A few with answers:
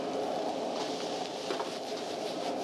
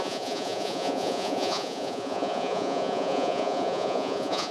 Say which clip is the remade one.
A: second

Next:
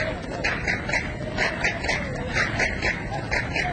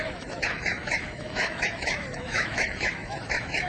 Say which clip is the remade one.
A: second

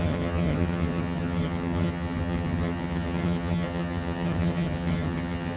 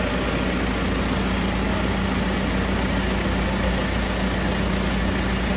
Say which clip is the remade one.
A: first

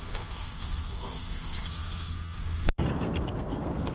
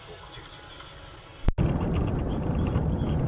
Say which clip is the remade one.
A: first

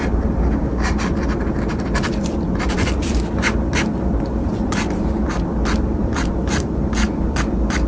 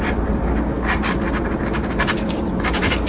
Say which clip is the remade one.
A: first